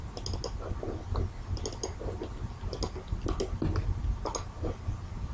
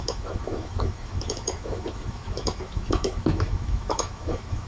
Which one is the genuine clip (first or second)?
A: first